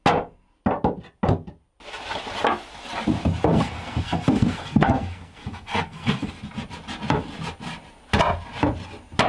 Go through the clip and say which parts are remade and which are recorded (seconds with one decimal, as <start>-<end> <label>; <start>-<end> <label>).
0.0-3.5 recorded; 3.5-6.3 remade; 6.3-9.3 recorded